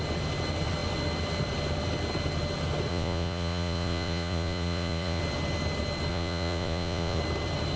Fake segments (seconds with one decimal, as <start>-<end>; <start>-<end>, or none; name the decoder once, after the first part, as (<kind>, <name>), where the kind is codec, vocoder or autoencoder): 2.9-5.2 (vocoder, Vocos); 6.1-7.2